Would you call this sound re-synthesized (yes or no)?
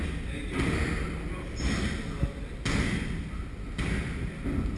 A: no